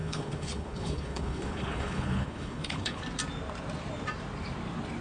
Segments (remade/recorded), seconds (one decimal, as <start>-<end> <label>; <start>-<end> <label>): 0.0-3.0 remade; 3.0-5.0 recorded